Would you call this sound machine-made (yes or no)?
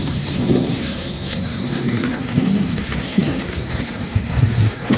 yes